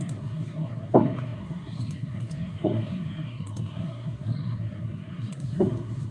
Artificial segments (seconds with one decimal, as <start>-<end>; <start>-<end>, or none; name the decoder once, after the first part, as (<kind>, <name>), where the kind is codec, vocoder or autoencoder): 0.0-6.1 (codec, SNAC)